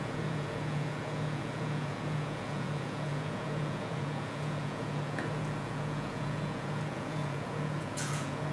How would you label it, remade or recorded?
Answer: remade